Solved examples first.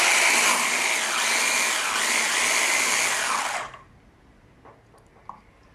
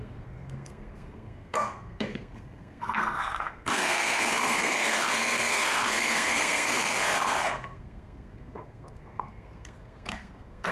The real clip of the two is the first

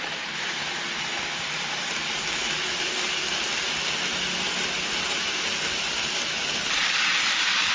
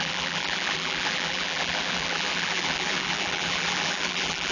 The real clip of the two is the first